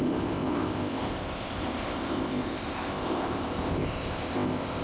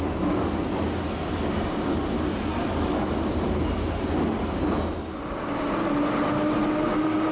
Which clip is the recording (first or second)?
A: second